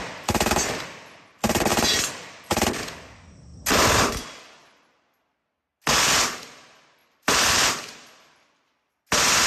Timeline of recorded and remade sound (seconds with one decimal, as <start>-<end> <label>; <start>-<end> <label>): 0.0-1.7 recorded; 1.7-2.8 remade; 2.8-7.0 recorded; 7.0-8.9 remade; 8.9-9.5 recorded